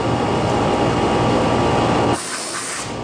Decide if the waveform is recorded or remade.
recorded